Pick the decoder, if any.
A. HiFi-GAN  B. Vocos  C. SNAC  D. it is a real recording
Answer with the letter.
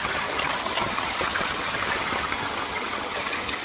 A